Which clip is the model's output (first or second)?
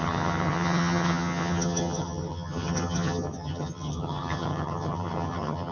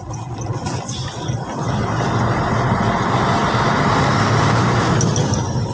first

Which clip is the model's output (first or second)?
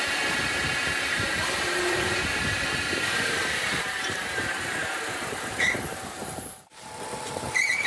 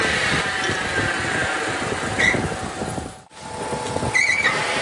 first